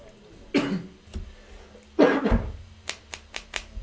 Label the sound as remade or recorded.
recorded